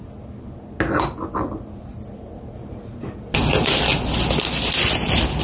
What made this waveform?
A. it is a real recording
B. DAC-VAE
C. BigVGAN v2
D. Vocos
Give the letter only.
A